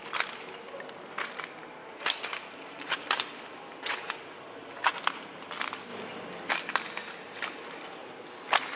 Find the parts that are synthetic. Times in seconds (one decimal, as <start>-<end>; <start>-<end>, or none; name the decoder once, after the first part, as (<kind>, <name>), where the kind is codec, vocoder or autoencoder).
1.8-4.7 (vocoder, BigVGAN v2); 7.0-8.0